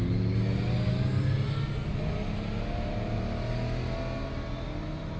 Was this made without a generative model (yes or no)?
yes